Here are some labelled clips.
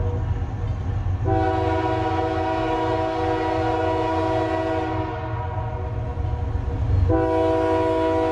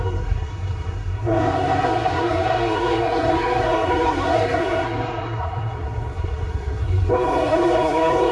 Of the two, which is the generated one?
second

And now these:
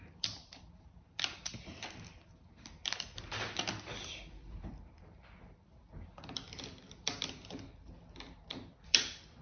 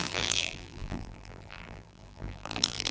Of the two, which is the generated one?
second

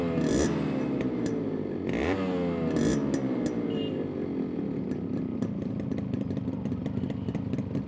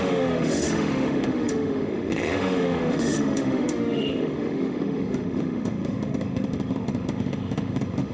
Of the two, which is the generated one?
second